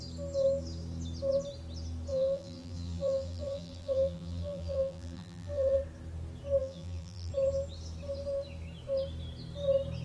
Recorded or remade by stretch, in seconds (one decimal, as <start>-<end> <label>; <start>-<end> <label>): 0.0-2.1 recorded; 2.1-5.8 remade; 5.8-6.6 recorded; 6.6-7.3 remade; 7.3-10.0 recorded